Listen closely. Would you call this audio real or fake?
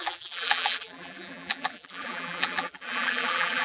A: fake